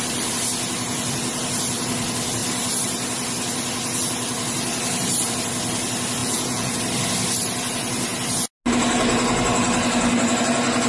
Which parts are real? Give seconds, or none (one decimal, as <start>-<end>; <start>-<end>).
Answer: 0.0-6.2; 6.8-10.9